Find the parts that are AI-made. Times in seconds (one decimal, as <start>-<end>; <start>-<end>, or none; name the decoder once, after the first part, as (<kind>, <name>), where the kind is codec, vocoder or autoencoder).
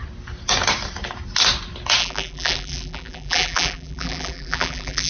2.0-5.1 (vocoder, BigVGAN v2)